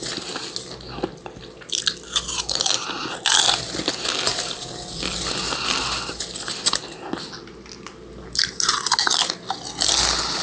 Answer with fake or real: real